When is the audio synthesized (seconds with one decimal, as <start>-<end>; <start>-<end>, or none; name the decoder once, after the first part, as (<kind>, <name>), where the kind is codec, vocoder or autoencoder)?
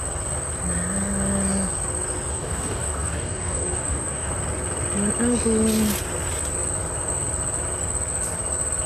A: 2.3-4.3 (codec, DAC)